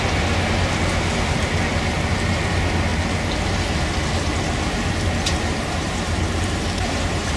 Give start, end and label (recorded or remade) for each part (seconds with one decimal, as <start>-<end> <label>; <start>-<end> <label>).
0.0-5.3 recorded; 5.3-7.4 remade